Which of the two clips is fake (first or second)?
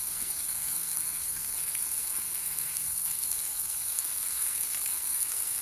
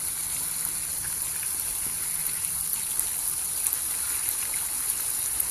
first